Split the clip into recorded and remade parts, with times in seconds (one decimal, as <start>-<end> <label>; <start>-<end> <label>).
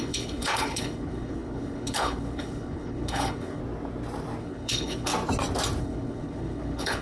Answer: 0.0-3.6 remade; 3.6-4.4 recorded; 4.4-5.1 remade; 5.1-5.8 recorded; 5.8-7.0 remade